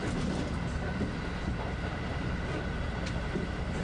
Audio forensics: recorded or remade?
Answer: recorded